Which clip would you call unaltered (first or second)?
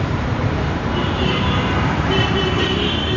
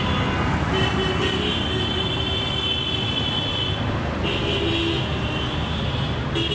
second